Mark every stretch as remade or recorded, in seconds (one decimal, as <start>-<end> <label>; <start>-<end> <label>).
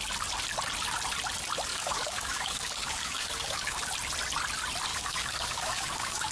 0.0-1.7 recorded; 1.7-3.8 remade; 3.8-4.9 recorded; 4.9-6.3 remade